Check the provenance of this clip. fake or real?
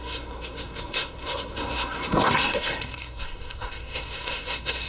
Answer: fake